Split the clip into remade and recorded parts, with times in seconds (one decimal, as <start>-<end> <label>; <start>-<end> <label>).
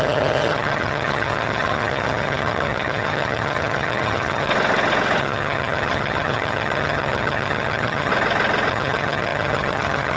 0.0-4.5 remade; 4.5-5.2 recorded; 5.2-8.1 remade; 8.1-8.7 recorded; 8.7-10.2 remade